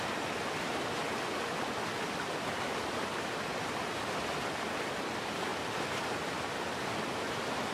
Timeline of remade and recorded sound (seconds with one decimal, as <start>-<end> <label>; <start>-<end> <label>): 0.0-3.5 recorded; 3.5-5.0 remade; 5.0-7.7 recorded